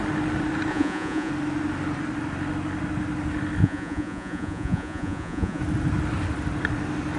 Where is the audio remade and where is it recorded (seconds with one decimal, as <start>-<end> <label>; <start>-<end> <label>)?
0.0-0.7 recorded; 0.7-1.3 remade; 1.3-3.6 recorded; 3.6-5.6 remade; 5.6-7.2 recorded